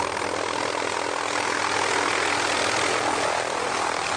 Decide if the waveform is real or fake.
real